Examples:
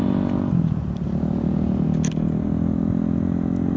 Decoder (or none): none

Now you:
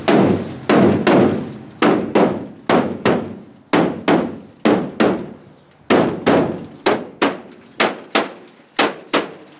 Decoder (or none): none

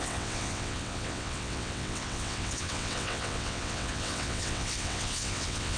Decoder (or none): vocoder, WaveNeXt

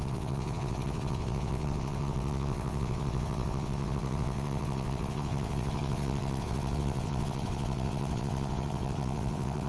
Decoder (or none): vocoder, WaveNeXt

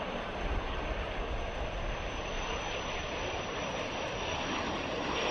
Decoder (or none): none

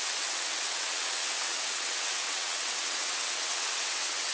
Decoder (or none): vocoder, WaveNeXt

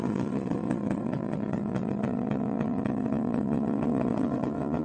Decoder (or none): vocoder, WaveNeXt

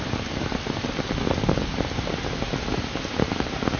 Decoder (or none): none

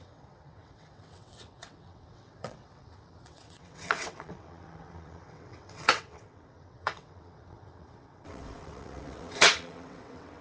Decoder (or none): vocoder, WaveNeXt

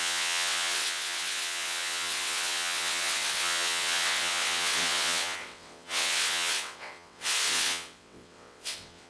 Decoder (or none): vocoder, WaveNeXt